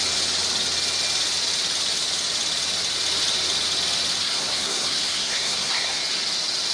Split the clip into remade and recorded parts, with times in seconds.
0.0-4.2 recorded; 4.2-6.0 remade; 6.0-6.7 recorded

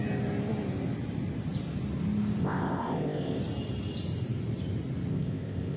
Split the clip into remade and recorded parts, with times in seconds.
0.0-2.4 recorded; 2.4-3.4 remade; 3.4-5.1 recorded; 5.1-5.8 remade